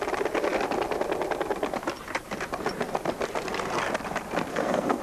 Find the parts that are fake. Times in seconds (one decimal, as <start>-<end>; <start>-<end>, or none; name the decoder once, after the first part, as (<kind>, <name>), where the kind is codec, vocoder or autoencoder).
4.5-5.0 (codec, SNAC)